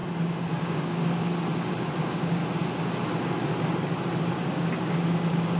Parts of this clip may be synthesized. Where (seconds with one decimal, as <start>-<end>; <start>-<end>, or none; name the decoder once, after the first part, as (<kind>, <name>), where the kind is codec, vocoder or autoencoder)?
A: 0.5-1.3 (codec, DAC); 2.0-2.4; 4.5-5.6